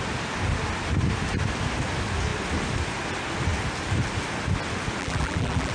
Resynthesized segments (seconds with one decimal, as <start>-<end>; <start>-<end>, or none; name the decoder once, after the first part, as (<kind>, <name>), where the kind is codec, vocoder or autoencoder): 5.0-5.7 (vocoder, BigVGAN v2)